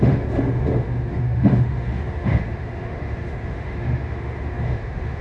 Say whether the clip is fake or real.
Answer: fake